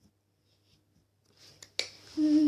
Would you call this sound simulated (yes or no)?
no